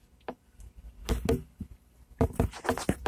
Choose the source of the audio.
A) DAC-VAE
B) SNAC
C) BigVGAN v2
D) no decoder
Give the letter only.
D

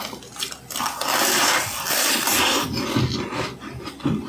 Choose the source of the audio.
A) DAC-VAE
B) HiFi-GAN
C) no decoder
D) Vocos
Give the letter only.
C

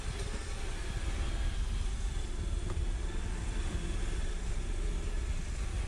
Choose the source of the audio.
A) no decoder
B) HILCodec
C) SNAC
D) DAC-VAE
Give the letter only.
A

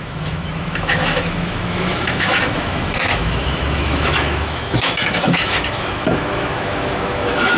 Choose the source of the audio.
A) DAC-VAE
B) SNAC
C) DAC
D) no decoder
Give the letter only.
A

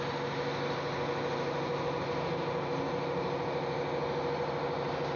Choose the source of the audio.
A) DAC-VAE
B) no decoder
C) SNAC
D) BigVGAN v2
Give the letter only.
B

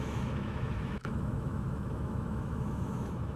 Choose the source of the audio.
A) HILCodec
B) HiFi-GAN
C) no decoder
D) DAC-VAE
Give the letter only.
D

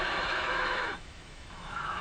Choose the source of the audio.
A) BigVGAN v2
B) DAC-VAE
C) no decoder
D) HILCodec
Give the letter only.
B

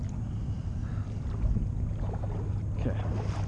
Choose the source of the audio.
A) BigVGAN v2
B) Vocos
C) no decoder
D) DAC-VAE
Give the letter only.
C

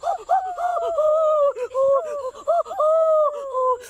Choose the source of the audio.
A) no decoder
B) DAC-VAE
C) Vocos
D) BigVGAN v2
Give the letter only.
A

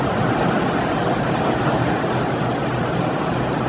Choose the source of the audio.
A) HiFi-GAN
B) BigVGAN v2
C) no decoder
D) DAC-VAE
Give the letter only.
C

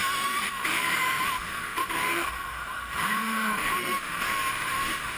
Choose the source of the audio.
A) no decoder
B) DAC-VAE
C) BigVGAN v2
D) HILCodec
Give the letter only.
B